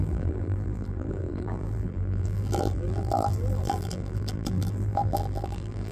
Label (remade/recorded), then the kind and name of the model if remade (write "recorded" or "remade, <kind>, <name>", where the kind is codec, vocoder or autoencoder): remade, vocoder, BigVGAN v2